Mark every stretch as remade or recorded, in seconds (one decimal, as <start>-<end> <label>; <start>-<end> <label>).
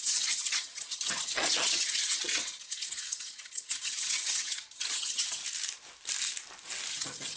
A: 0.0-5.4 remade; 5.4-6.9 recorded; 6.9-7.4 remade